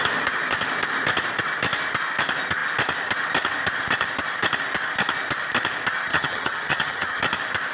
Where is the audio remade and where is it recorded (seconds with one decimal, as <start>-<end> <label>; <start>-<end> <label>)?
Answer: 0.0-6.1 recorded; 6.1-7.2 remade; 7.2-7.7 recorded